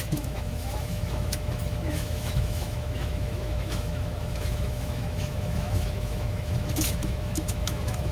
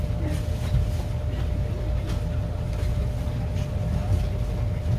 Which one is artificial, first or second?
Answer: first